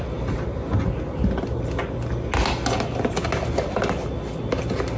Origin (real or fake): real